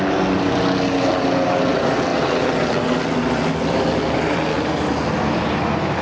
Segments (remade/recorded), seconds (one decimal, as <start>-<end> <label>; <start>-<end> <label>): 0.0-6.0 recorded